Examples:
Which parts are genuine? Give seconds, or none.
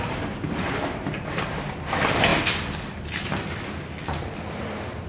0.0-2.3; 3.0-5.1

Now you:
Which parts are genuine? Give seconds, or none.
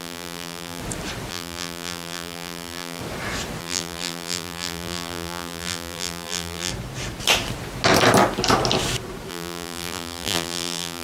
0.8-1.3; 3.0-3.6; 6.7-9.3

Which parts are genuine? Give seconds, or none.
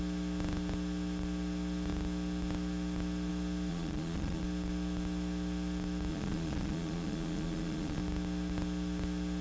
0.0-3.7; 4.4-6.1; 8.0-9.4